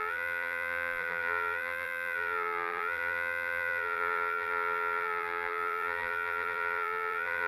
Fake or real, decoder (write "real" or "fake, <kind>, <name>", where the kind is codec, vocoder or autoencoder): fake, vocoder, BigVGAN v2